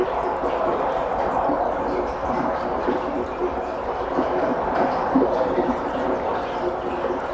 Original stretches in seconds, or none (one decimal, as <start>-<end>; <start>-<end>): 0.0-7.3